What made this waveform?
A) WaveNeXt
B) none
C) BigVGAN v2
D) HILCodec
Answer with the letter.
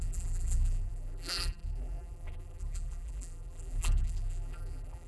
C